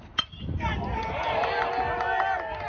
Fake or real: real